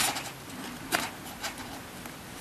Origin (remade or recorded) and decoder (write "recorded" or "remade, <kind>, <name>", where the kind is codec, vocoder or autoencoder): recorded